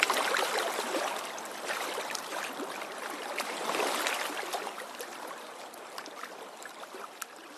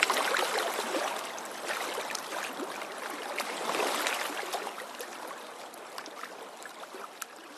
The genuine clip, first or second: second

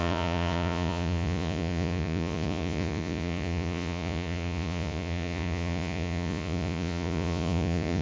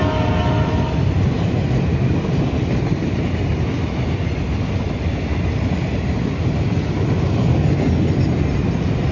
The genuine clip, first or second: second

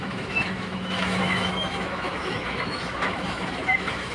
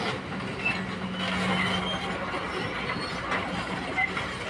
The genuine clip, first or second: second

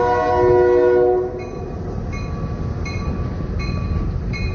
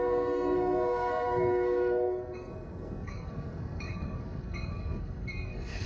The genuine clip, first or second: first